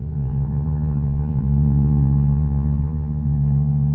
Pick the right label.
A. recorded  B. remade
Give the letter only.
B